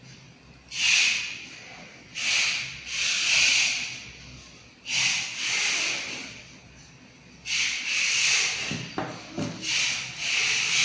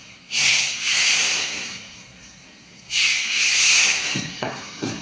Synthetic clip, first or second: second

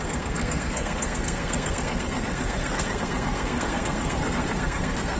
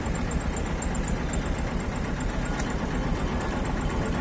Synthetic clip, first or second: first